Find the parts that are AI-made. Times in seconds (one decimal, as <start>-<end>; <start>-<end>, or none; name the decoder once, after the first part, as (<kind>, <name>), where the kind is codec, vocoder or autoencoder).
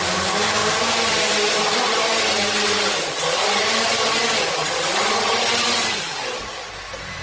0.6-1.6 (vocoder, BigVGAN v2); 2.3-3.0